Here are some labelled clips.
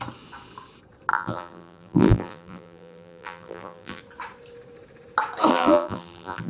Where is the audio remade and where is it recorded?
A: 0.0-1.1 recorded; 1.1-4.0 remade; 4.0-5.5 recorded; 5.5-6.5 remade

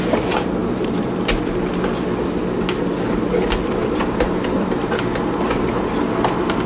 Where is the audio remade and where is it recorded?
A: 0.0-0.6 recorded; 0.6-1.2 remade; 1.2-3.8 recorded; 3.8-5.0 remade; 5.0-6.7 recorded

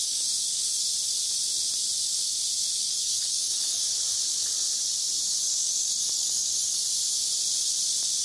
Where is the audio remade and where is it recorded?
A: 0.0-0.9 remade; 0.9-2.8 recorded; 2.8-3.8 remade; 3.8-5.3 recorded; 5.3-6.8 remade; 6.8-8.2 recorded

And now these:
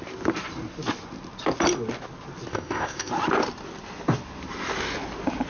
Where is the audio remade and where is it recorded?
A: 0.0-2.5 recorded; 2.5-3.1 remade; 3.1-5.5 recorded

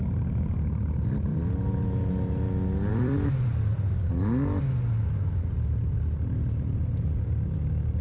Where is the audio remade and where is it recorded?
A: 0.0-1.3 recorded; 1.3-2.1 remade; 2.1-2.9 recorded; 2.9-4.0 remade; 4.0-8.0 recorded

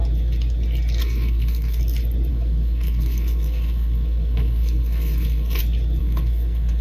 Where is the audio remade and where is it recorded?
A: 0.0-1.0 recorded; 1.0-1.8 remade; 1.8-2.3 recorded; 2.3-5.6 remade; 5.6-6.0 recorded; 6.0-6.8 remade